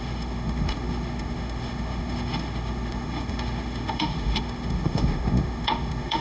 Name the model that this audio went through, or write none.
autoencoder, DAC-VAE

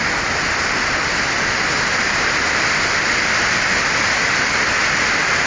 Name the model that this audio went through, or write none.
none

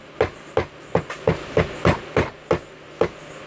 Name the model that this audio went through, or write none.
none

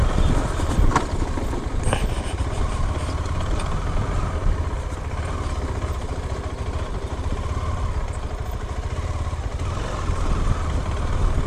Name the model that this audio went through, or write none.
none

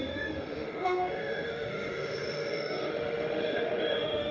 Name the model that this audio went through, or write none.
autoencoder, DAC-VAE